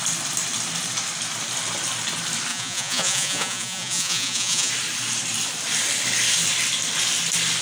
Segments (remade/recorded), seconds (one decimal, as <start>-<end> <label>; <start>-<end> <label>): 0.0-2.5 recorded; 2.5-4.7 remade; 4.7-7.6 recorded